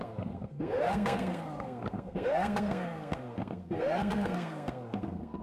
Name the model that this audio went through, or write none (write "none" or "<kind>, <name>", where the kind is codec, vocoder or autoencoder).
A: codec, SNAC